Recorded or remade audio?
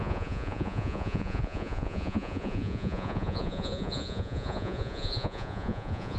remade